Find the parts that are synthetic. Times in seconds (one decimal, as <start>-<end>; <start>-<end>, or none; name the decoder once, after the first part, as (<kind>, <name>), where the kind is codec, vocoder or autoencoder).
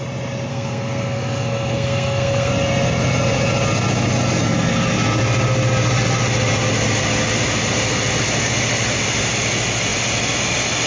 0.5-2.5 (codec, SNAC)